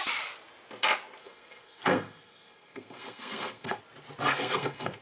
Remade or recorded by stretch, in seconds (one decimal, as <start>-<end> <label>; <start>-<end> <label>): 0.0-1.2 recorded; 1.2-3.8 remade; 3.8-4.3 recorded; 4.3-5.0 remade